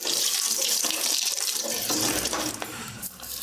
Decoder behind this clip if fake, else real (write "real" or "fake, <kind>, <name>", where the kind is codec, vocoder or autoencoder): fake, vocoder, BigVGAN v2